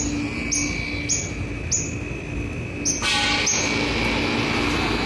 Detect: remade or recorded recorded